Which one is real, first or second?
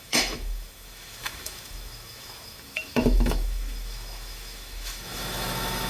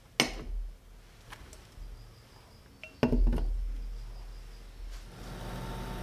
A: second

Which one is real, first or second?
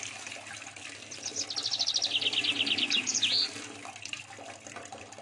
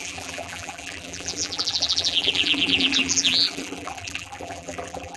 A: first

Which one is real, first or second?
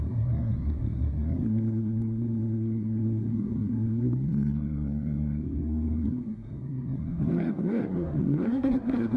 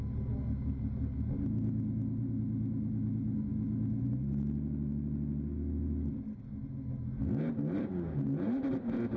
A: second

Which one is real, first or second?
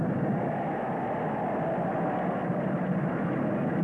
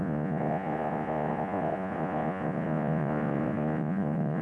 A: first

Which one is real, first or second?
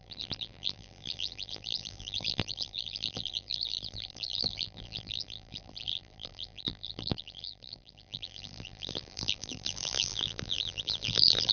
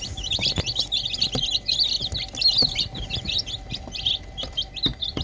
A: second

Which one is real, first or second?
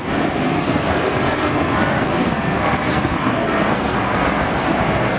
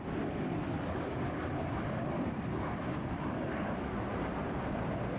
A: second